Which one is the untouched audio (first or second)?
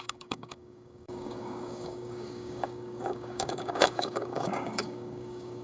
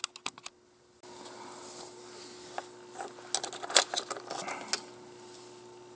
second